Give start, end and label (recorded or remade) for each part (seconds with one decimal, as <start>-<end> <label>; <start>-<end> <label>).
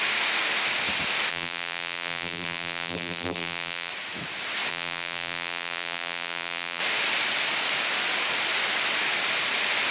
0.0-1.3 recorded; 1.3-3.9 remade; 3.9-4.7 recorded; 4.7-6.8 remade; 6.8-9.9 recorded